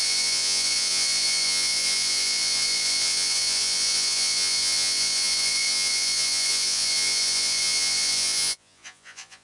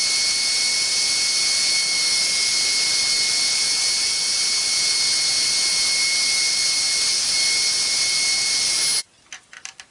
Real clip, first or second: second